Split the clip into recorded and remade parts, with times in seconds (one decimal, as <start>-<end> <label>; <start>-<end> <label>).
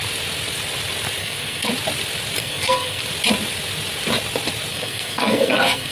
0.0-1.2 recorded; 1.2-1.7 remade; 1.7-2.4 recorded; 2.4-3.0 remade; 3.0-4.7 recorded; 4.7-5.9 remade